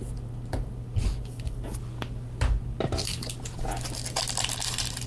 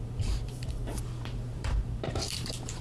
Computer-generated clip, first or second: second